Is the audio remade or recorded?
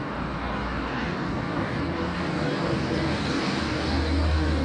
remade